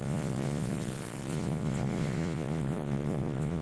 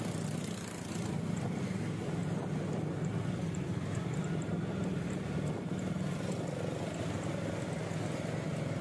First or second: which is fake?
first